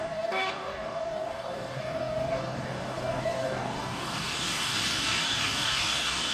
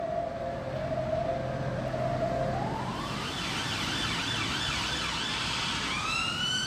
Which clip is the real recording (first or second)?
second